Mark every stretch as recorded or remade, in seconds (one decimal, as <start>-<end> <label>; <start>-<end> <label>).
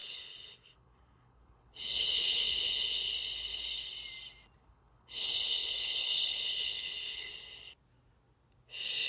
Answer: 0.0-3.1 remade; 3.1-4.6 recorded; 4.6-7.3 remade; 7.3-9.1 recorded